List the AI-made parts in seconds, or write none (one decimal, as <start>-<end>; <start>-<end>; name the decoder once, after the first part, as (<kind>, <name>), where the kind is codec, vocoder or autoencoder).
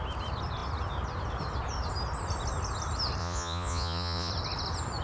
3.2-4.3 (vocoder, Vocos)